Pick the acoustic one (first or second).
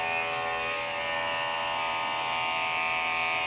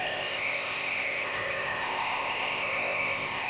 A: first